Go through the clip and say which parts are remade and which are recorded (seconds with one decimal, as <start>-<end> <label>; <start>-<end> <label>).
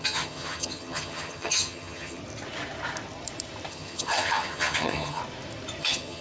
0.0-2.2 remade; 2.2-3.7 recorded; 3.7-5.2 remade; 5.2-5.8 recorded; 5.8-6.2 remade